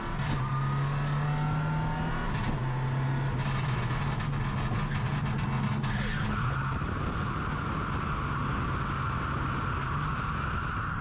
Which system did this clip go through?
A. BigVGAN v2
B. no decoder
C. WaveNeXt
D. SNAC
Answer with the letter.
B